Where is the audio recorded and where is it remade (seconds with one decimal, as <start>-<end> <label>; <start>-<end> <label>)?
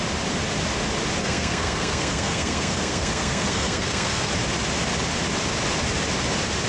0.0-1.2 recorded; 1.2-4.3 remade; 4.3-6.7 recorded